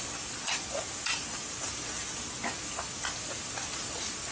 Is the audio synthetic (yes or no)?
no